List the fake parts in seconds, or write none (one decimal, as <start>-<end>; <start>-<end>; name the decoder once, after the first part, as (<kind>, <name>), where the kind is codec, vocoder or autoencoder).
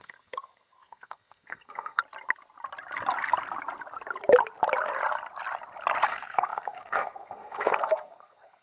0.0-2.0 (codec, SNAC); 6.1-8.6